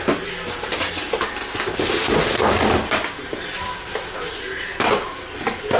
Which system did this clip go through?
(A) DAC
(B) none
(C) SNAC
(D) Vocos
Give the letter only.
B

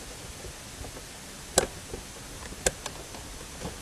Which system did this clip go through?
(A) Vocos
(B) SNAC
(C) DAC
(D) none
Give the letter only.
D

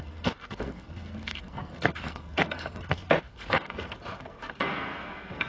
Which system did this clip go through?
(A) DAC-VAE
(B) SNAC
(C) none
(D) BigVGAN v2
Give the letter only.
B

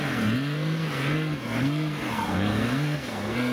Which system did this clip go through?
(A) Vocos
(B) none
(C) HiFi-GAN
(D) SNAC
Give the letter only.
D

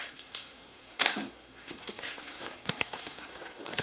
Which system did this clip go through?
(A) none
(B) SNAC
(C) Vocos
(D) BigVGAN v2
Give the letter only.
B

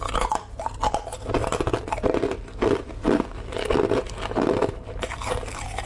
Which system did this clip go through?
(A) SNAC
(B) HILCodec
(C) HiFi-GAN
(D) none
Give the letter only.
D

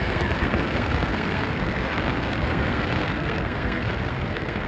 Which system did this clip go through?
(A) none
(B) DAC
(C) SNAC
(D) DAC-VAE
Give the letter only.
C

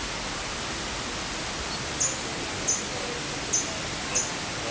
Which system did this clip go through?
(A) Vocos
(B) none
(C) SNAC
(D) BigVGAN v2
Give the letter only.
B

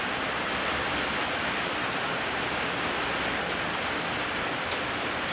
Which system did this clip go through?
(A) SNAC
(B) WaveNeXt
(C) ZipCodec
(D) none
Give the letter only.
D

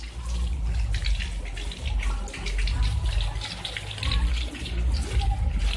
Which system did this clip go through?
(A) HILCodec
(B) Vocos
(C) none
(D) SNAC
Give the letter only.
C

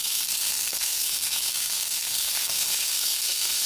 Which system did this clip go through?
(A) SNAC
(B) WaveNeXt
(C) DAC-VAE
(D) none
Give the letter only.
A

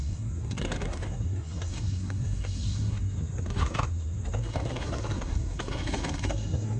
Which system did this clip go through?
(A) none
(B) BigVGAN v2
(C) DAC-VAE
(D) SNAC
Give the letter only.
D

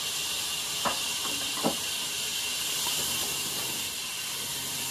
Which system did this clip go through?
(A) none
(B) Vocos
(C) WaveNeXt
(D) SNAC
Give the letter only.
A